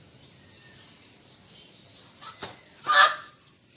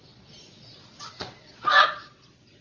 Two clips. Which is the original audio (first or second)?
first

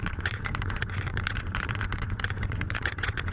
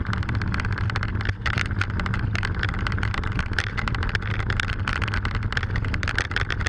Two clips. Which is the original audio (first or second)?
second